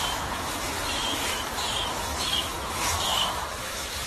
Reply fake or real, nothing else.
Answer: fake